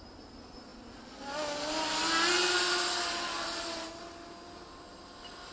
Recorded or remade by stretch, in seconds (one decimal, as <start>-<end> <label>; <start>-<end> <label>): 0.0-5.5 recorded